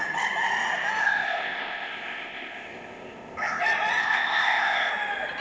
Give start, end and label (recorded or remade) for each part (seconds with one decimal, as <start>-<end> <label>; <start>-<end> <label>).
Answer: 0.0-1.0 recorded; 1.0-3.6 remade; 3.6-4.0 recorded; 4.0-4.9 remade; 4.9-5.4 recorded